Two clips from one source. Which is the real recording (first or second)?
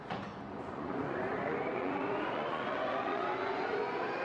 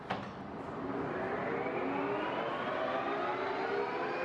second